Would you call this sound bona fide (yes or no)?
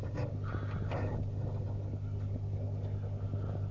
yes